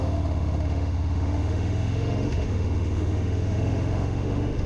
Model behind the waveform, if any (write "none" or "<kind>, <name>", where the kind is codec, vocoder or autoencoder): autoencoder, DAC-VAE